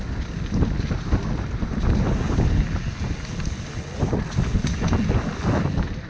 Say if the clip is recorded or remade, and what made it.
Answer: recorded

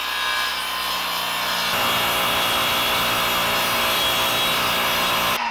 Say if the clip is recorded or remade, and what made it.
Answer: recorded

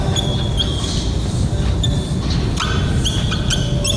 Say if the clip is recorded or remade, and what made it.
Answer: recorded